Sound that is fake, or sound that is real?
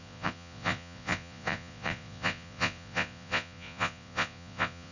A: fake